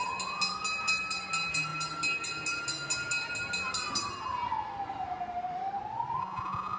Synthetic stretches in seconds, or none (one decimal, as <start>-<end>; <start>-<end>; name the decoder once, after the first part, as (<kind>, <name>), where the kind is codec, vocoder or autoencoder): 6.2-6.8 (vocoder, Vocos)